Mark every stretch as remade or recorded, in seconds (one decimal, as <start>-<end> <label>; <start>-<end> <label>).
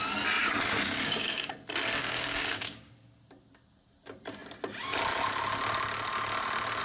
0.0-0.4 recorded; 0.4-1.5 remade; 1.5-2.0 recorded; 2.0-2.9 remade; 2.9-6.8 recorded